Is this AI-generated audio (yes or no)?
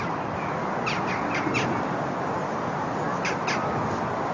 no